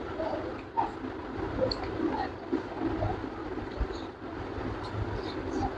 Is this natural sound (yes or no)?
yes